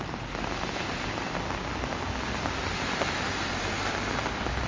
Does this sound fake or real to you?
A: real